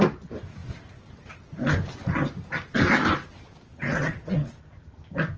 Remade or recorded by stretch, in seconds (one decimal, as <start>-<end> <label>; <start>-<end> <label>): 0.0-3.7 recorded; 3.7-4.5 remade; 4.5-5.4 recorded